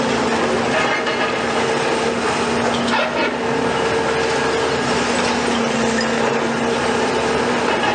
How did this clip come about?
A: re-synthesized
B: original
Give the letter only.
B